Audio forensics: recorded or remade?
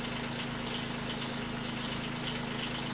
recorded